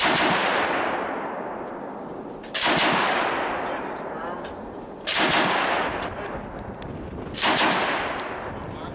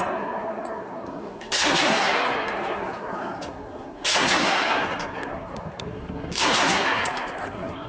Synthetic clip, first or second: second